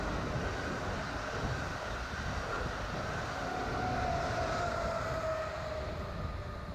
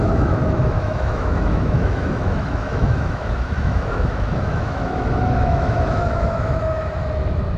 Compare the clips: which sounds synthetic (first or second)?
second